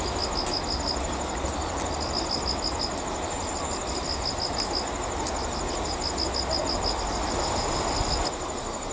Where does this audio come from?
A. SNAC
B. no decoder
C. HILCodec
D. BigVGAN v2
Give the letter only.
B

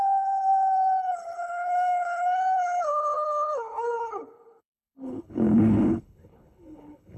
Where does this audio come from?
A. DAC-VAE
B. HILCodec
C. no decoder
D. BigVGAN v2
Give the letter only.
B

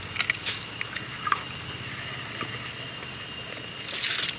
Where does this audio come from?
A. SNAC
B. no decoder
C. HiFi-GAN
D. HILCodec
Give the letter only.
B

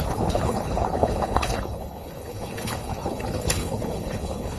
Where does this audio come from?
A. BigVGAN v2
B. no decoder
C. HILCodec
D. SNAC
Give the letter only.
C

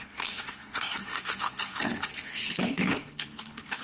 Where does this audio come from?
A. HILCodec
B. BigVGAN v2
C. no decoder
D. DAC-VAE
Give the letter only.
A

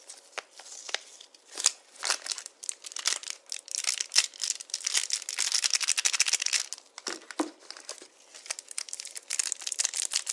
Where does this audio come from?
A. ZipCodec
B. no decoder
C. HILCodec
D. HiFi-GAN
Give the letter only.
B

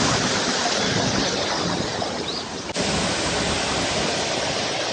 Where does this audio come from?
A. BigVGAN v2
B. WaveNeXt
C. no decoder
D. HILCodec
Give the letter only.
C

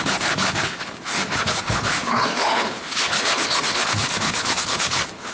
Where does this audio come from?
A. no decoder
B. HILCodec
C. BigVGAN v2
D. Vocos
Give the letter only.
B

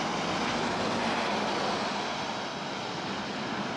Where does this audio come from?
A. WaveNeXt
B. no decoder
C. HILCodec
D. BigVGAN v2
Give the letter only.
B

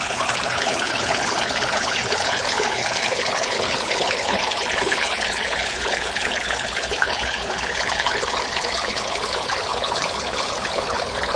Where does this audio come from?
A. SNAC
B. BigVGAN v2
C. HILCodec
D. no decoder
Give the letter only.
C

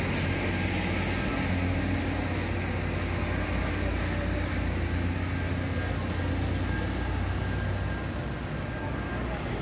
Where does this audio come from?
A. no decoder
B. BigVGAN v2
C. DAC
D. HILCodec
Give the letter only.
A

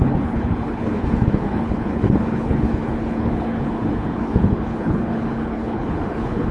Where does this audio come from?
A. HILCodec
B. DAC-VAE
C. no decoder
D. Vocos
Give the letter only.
A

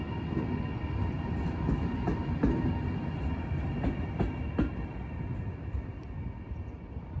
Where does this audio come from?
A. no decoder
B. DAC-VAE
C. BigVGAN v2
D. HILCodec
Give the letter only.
A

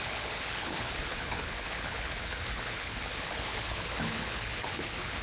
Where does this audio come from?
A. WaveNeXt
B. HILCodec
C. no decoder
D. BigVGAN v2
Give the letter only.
B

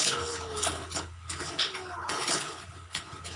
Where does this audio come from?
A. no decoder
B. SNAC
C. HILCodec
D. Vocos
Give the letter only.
C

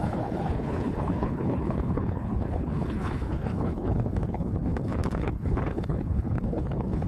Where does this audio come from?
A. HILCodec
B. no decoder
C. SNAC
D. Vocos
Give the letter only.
A